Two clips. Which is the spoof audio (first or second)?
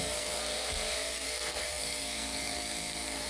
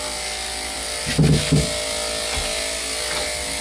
first